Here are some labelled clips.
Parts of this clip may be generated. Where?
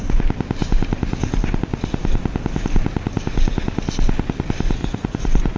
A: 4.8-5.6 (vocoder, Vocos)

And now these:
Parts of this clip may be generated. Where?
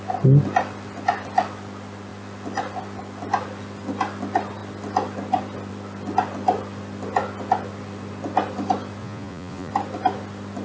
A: 9.0-9.7 (vocoder, Vocos)